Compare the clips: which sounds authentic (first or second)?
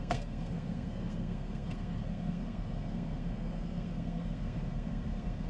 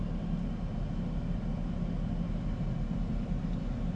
second